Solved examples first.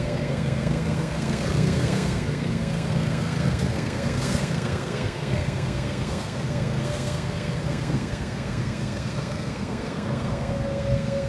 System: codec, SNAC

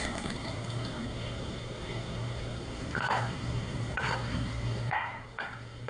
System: codec, SNAC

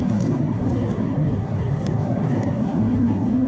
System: codec, SNAC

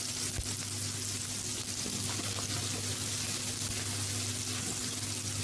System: none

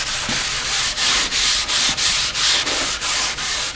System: none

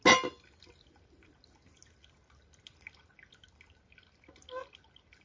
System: none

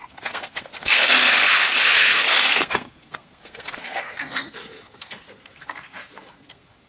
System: codec, SNAC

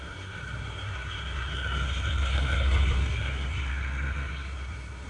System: codec, SNAC